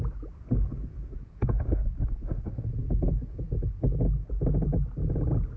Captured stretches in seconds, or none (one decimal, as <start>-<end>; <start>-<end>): 0.0-0.7; 1.8-5.6